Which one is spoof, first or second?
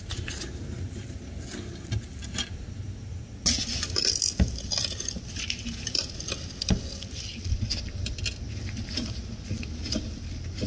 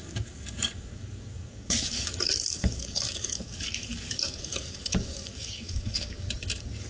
second